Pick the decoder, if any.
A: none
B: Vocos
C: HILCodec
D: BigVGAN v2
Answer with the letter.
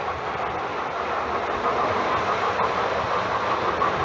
A